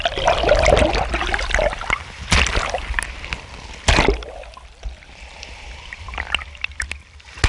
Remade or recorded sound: recorded